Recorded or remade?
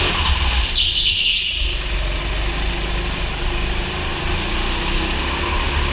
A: recorded